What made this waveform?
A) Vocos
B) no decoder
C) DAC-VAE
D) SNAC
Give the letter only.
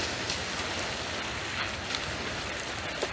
B